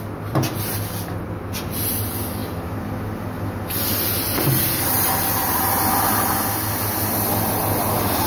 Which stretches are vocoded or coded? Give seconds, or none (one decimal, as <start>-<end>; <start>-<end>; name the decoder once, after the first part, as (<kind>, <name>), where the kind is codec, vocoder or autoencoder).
none